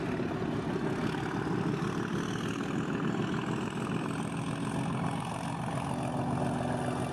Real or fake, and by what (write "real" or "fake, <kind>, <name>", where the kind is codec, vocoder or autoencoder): real